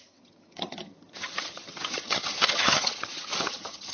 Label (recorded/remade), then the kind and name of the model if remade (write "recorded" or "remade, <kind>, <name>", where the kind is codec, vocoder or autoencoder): remade, vocoder, HiFi-GAN